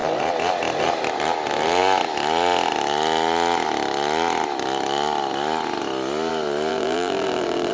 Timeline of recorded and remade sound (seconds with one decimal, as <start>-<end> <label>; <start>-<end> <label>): 0.0-6.7 recorded; 6.7-7.7 remade